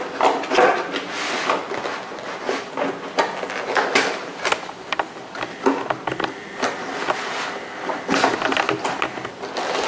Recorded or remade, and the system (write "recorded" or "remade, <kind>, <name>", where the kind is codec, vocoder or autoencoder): recorded